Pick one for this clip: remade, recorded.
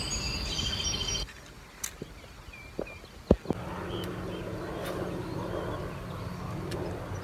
recorded